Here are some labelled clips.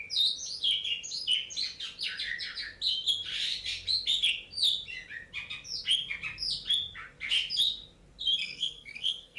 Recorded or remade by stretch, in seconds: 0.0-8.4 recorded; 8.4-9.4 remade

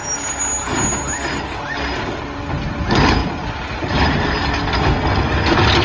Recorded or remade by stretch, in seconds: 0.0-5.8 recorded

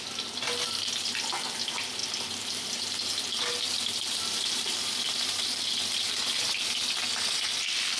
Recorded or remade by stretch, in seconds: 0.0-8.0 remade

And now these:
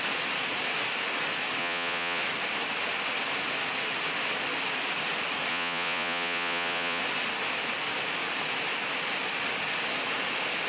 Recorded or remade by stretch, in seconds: 0.0-1.6 recorded; 1.6-2.2 remade; 2.2-5.5 recorded; 5.5-7.0 remade; 7.0-10.7 recorded

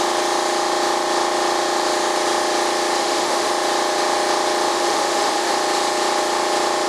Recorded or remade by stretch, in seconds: 0.0-3.0 recorded; 3.0-3.5 remade; 3.5-4.7 recorded; 4.7-5.5 remade; 5.5-6.9 recorded